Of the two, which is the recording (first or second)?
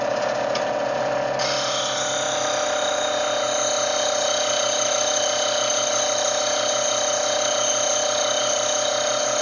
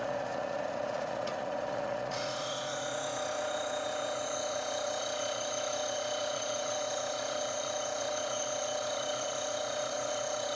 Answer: first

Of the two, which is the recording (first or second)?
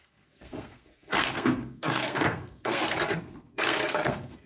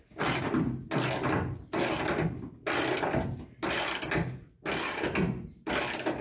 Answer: second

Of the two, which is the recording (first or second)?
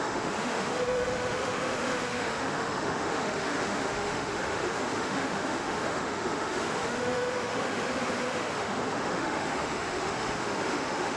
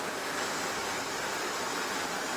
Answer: second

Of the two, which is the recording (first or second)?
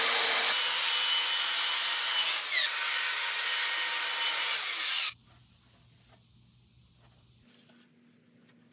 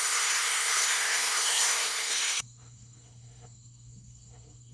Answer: first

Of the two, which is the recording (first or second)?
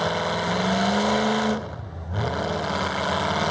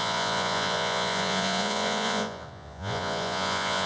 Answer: first